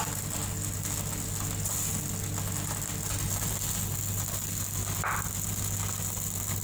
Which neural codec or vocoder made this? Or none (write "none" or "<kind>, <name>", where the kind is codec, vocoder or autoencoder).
none